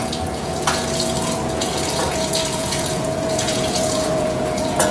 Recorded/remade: remade